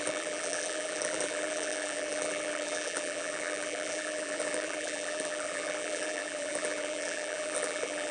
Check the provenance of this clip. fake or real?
fake